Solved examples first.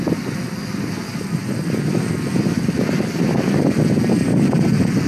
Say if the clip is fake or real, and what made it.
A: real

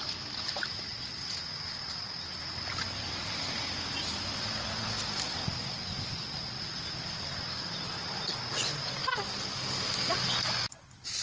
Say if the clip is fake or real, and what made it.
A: real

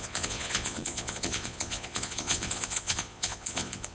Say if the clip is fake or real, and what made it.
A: fake, vocoder, Vocos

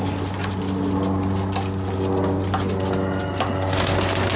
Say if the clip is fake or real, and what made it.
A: real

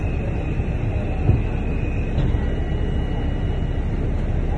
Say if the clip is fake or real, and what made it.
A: real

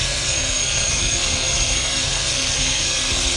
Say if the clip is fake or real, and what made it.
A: fake, codec, SNAC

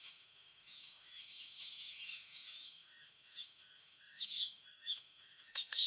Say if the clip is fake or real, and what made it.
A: fake, autoencoder, DAC-VAE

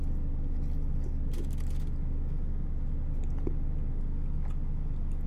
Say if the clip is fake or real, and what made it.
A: real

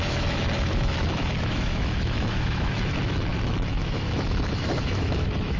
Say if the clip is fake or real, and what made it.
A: fake, autoencoder, DAC-VAE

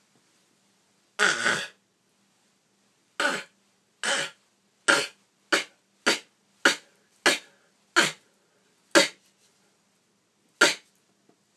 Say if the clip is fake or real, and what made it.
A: real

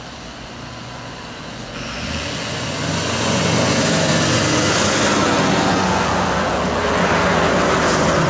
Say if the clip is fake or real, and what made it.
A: fake, vocoder, Vocos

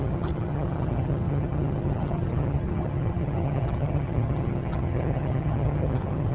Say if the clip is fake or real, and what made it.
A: fake, vocoder, HiFi-GAN